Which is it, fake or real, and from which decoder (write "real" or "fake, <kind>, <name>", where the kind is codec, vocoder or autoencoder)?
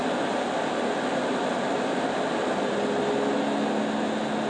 real